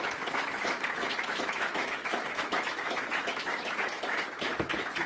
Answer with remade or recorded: remade